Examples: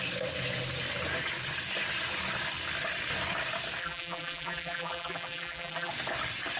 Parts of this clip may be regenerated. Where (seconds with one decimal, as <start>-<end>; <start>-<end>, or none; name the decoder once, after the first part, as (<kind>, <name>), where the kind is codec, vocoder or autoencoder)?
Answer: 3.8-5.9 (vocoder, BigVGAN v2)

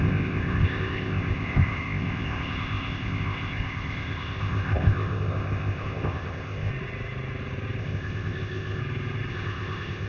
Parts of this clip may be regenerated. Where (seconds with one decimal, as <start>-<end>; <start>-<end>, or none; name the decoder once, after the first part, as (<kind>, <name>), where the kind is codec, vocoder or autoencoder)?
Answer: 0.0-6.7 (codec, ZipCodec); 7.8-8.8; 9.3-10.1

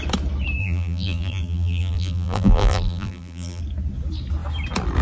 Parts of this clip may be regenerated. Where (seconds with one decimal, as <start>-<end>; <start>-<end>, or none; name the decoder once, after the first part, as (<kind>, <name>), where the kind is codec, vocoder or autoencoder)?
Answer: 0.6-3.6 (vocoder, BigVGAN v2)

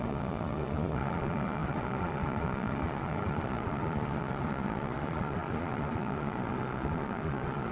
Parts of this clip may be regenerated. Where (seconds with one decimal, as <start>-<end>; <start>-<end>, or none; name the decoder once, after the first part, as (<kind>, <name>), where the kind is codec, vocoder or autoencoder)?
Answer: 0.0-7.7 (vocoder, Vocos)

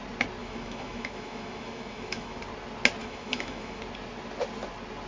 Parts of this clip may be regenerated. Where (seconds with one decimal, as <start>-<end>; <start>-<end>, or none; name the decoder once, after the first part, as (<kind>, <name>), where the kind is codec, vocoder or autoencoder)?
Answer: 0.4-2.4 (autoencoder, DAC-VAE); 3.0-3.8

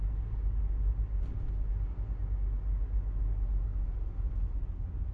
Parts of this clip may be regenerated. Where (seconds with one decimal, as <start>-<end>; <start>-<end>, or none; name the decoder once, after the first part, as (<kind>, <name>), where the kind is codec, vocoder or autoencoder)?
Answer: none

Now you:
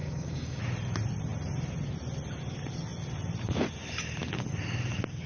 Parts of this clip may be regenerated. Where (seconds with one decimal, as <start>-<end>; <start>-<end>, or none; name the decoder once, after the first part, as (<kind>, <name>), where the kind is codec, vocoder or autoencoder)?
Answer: 0.0-0.6 (codec, DAC)